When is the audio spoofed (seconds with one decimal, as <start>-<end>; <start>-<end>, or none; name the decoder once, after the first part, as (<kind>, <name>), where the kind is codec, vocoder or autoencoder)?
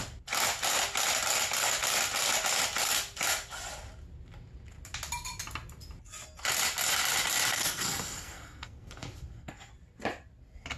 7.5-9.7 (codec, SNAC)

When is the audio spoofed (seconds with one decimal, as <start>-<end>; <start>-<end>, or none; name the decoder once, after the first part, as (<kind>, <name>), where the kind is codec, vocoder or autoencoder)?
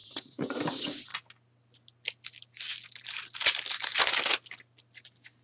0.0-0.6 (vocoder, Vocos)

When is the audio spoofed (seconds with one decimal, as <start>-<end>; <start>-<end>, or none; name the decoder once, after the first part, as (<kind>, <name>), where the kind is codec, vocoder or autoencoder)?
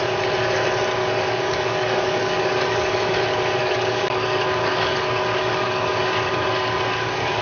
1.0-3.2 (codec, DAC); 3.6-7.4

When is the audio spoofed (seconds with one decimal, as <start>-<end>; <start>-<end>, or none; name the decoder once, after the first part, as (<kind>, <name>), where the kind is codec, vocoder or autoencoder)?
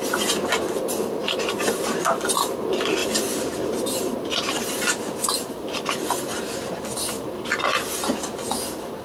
1.2-1.8 (vocoder, BigVGAN v2); 3.0-5.9